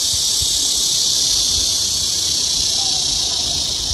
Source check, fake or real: real